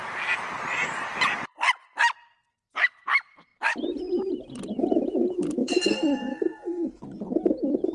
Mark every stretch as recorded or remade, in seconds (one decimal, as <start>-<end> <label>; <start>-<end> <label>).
0.0-5.6 recorded; 5.6-7.0 remade; 7.0-7.9 recorded